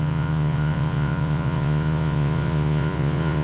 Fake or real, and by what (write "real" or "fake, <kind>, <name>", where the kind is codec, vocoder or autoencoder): fake, vocoder, Vocos